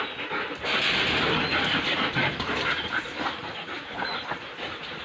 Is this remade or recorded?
recorded